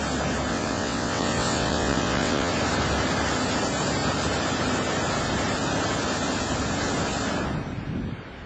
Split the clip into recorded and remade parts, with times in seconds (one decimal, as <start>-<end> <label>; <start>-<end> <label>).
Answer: 0.0-0.5 recorded; 0.5-2.5 remade; 2.5-8.5 recorded